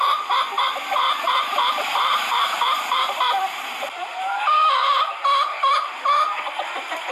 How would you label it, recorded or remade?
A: remade